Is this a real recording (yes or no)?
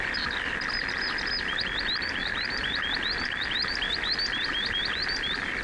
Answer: yes